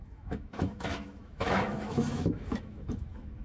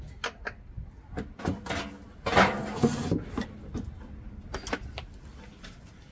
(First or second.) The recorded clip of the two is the second